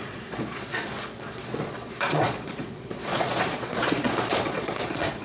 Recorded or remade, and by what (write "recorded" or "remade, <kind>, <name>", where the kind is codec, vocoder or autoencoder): remade, vocoder, Vocos